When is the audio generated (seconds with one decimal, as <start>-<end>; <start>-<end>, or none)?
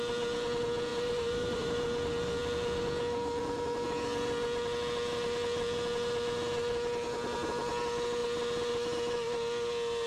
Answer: 0.9-1.8